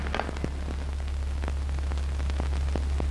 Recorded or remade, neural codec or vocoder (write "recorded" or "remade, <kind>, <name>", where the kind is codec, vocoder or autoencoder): recorded